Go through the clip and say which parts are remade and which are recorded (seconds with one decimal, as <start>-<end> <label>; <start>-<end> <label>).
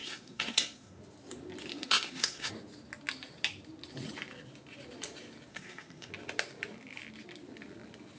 0.0-1.0 remade; 1.0-1.7 recorded; 1.7-2.5 remade; 2.5-5.5 recorded; 5.5-6.1 remade; 6.1-8.2 recorded